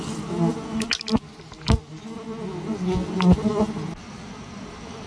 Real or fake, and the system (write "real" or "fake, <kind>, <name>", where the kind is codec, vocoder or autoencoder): real